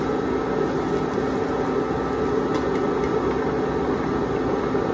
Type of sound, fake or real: real